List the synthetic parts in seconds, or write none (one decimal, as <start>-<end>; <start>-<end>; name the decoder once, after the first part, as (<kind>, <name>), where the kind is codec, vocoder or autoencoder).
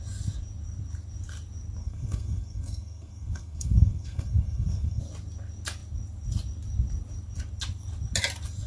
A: 1.8-5.0 (codec, SNAC)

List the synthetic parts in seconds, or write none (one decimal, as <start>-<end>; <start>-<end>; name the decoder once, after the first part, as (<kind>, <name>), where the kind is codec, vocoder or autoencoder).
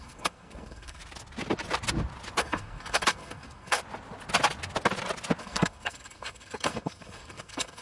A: 0.0-1.0 (codec, SNAC); 2.4-3.8; 5.4-7.8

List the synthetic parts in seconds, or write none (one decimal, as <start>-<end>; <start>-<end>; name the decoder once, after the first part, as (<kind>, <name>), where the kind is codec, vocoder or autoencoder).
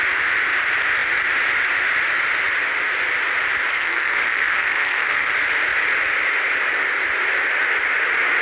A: 3.7-5.3 (codec, SNAC)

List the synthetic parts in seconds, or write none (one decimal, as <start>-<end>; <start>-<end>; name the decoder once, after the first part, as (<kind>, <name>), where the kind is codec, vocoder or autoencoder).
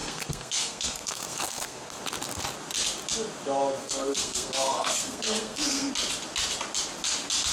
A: 0.0-2.0 (codec, SNAC); 3.8-5.9